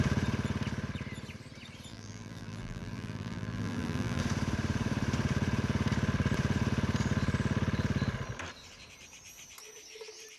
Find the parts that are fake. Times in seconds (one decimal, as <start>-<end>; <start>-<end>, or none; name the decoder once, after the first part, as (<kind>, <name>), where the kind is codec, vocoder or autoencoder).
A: 1.9-4.2 (vocoder, BigVGAN v2)